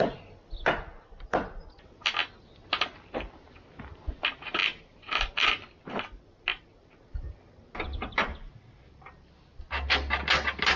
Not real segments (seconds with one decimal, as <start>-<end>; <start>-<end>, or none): none